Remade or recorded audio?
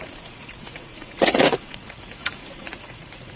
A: remade